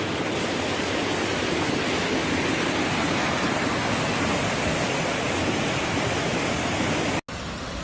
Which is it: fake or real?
real